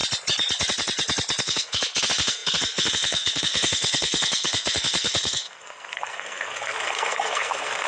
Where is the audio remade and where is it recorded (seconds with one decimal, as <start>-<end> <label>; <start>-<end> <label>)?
0.0-1.4 recorded; 1.4-7.9 remade